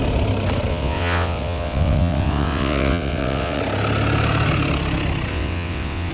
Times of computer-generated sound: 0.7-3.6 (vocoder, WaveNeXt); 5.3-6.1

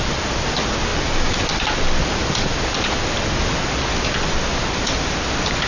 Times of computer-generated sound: none

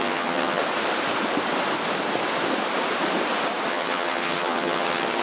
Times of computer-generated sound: 0.0-0.6 (vocoder, HiFi-GAN); 3.7-5.2